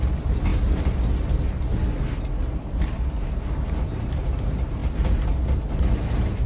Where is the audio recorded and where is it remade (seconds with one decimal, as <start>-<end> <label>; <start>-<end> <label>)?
0.0-6.5 recorded